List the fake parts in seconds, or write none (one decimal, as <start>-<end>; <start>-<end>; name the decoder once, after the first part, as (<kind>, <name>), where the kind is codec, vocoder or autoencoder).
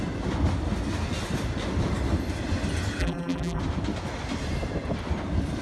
3.0-3.6 (vocoder, BigVGAN v2)